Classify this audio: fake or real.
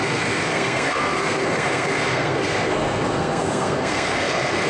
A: fake